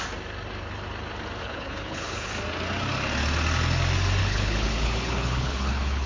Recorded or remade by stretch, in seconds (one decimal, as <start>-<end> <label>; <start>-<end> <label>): 0.0-1.4 recorded; 1.4-2.3 remade; 2.3-4.2 recorded; 4.2-6.1 remade